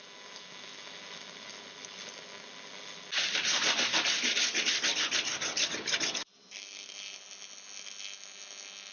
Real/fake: real